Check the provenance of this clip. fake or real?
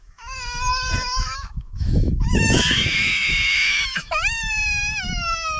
fake